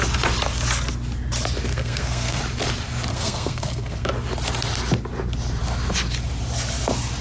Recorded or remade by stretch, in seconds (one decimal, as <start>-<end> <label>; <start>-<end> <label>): 0.0-1.7 recorded; 1.7-2.4 remade; 2.4-3.1 recorded; 3.1-4.1 remade; 4.1-7.2 recorded